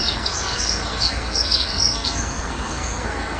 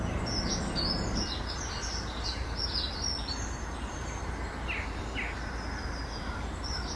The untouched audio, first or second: second